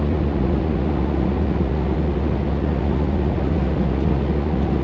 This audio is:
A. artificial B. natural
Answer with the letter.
A